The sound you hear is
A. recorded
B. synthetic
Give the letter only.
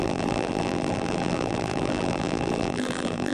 B